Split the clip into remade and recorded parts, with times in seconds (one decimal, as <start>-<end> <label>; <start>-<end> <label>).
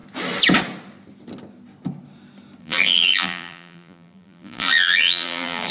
0.0-2.6 recorded; 2.6-5.7 remade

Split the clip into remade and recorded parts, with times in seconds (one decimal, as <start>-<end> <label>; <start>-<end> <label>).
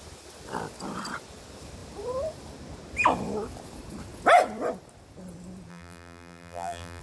0.0-5.7 recorded; 5.7-7.0 remade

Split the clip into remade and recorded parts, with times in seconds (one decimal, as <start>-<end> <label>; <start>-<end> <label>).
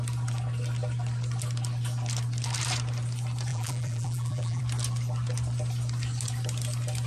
0.0-3.5 recorded; 3.5-4.6 remade; 4.6-7.1 recorded